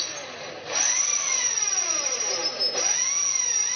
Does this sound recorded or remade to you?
recorded